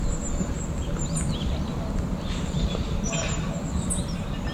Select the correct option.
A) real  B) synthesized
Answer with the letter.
A